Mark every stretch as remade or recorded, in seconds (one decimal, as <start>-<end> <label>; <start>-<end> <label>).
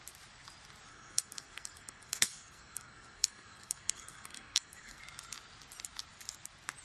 0.0-0.9 recorded; 0.9-5.0 remade; 5.0-6.8 recorded